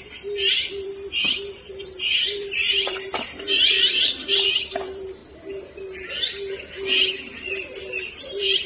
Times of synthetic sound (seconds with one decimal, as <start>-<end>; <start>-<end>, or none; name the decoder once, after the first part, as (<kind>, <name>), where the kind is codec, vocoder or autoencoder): 0.0-5.2 (vocoder, BigVGAN v2); 7.5-8.7